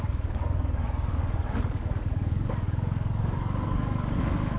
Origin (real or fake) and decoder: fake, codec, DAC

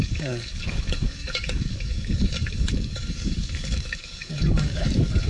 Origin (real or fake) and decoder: fake, codec, DAC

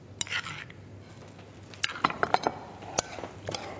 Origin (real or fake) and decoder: real